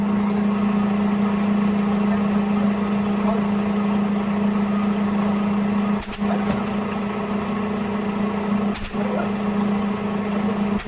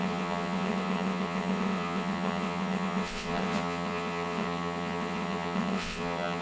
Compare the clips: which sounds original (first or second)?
first